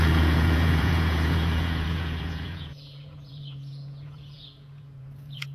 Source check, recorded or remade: remade